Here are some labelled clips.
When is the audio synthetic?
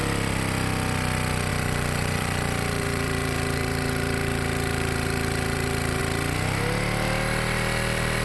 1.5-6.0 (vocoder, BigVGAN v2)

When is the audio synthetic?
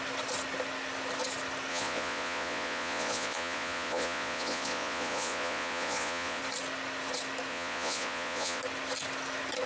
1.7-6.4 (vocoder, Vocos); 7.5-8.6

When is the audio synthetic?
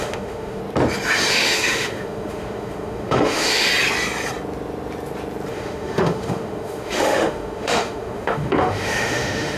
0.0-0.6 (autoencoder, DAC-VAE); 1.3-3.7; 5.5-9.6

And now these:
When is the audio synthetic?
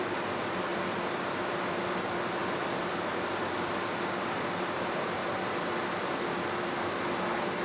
none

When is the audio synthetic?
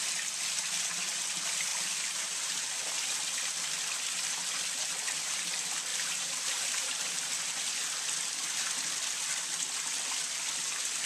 1.7-2.7 (vocoder, BigVGAN v2); 5.9-7.5